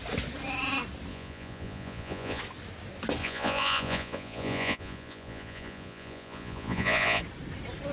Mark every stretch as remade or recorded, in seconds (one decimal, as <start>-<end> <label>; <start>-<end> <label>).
0.0-1.1 recorded; 1.1-2.4 remade; 2.4-3.2 recorded; 3.2-7.2 remade; 7.2-7.9 recorded